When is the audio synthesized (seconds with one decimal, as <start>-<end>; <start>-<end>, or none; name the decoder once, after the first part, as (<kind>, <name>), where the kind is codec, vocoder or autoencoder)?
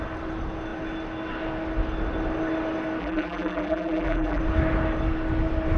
3.0-4.4 (vocoder, BigVGAN v2)